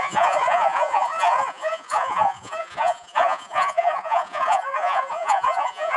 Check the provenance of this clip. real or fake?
fake